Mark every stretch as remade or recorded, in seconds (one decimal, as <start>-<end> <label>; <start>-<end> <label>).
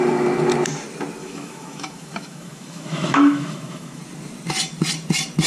0.0-1.2 recorded; 1.2-4.0 remade; 4.0-5.5 recorded